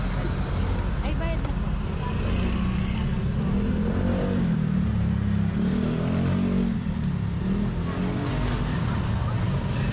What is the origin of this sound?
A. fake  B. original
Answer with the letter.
B